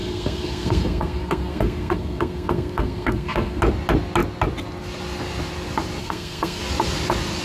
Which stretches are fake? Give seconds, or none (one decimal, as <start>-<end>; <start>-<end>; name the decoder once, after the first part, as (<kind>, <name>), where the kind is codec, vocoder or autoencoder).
0.0-3.6 (codec, SNAC); 6.0-6.6